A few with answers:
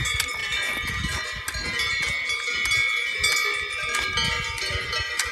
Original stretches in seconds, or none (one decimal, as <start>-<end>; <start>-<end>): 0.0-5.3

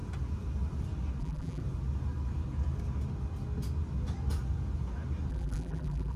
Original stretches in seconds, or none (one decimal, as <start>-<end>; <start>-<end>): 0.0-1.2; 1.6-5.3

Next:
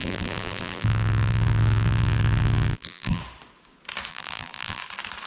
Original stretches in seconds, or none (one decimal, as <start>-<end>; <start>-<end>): 3.2-4.1; 4.8-5.3

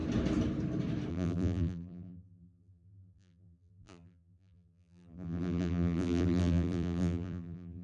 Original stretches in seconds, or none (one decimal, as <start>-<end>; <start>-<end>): 0.0-1.1

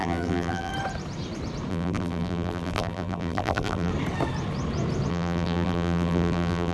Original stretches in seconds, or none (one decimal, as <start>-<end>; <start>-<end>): 0.7-1.7; 3.9-5.1

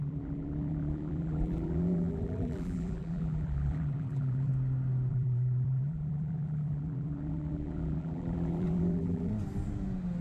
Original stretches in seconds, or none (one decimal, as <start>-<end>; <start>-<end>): 4.5-5.1; 9.3-10.2

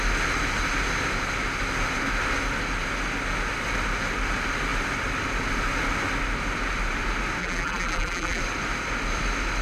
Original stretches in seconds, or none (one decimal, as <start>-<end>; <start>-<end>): 0.0-7.4; 8.4-9.6